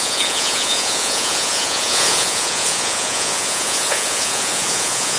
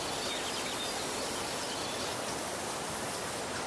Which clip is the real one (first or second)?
second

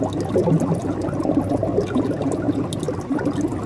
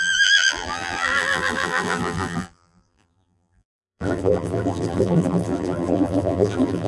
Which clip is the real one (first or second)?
first